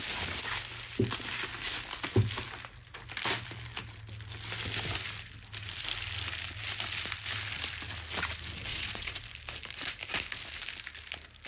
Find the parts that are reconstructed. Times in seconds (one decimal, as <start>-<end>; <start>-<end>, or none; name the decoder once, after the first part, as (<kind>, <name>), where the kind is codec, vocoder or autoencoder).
8.7-9.2 (vocoder, WaveNeXt)

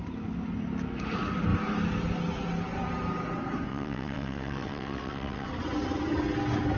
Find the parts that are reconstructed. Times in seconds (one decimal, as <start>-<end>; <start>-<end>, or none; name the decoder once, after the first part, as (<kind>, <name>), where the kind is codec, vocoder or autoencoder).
3.7-5.5 (vocoder, WaveNeXt)

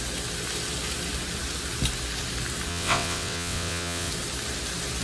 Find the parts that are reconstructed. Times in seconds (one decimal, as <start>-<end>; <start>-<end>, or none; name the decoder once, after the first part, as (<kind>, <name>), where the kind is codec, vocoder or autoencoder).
2.7-4.1 (vocoder, WaveNeXt)

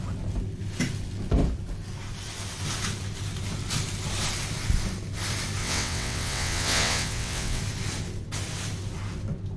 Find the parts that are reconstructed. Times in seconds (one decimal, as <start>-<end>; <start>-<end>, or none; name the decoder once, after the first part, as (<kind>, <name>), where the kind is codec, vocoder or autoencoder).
5.6-7.6 (vocoder, WaveNeXt)

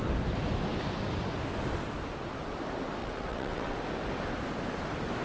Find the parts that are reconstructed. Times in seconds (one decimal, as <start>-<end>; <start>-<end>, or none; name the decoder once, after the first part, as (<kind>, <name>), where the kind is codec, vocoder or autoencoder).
3.0-3.8 (vocoder, WaveNeXt)

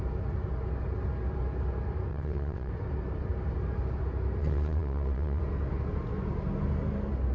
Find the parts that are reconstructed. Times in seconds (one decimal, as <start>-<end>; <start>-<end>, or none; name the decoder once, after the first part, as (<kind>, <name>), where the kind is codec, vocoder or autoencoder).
2.1-2.7 (vocoder, WaveNeXt); 4.4-5.4

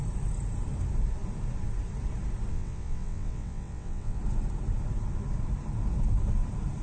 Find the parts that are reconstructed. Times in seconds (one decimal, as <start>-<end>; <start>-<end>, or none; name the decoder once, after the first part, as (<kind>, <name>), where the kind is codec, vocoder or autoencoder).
2.5-4.2 (vocoder, WaveNeXt)